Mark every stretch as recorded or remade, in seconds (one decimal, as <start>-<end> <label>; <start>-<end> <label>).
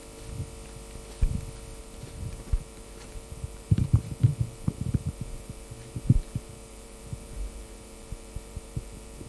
0.0-1.8 recorded; 1.8-9.3 remade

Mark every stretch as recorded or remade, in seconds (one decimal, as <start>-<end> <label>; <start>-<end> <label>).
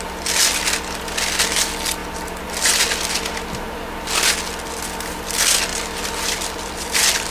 0.0-5.7 recorded; 5.7-7.3 remade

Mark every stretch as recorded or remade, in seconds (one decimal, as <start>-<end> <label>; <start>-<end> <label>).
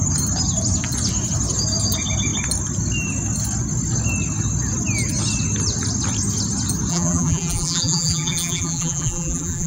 0.0-6.9 recorded; 6.9-9.7 remade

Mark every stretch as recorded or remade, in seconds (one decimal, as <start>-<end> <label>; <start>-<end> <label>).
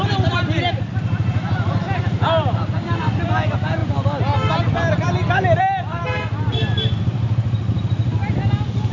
0.0-8.9 recorded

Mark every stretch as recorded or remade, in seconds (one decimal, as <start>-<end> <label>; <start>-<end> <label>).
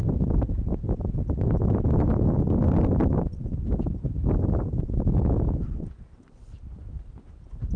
0.0-1.3 recorded; 1.3-7.8 remade